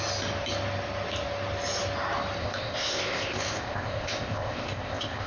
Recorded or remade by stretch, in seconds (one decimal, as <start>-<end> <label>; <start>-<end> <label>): 0.0-2.4 recorded; 2.4-5.3 remade